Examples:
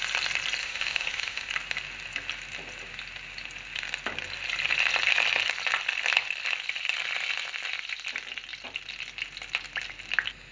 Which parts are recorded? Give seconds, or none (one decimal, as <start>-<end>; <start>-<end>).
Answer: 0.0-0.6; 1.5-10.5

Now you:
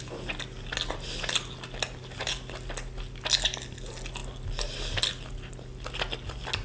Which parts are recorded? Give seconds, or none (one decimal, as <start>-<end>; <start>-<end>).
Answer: 0.0-6.6

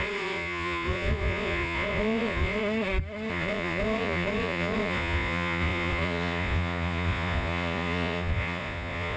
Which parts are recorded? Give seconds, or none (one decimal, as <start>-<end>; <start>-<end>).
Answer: 2.6-3.3